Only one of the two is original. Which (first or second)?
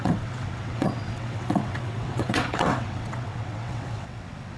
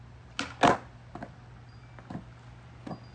second